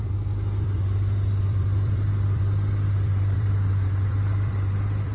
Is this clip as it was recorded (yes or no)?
no